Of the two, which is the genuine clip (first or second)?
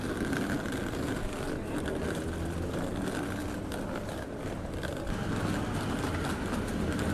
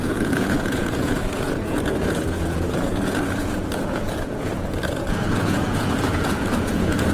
first